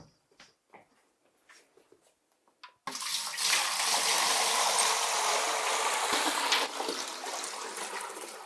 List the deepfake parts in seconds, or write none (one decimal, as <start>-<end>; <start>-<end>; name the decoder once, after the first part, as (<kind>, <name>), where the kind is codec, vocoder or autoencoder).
none